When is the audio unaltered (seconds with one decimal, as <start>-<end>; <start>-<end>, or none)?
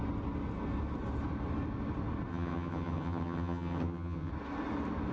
0.0-2.3; 4.3-5.1